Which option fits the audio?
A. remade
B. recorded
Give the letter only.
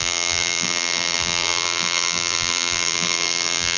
A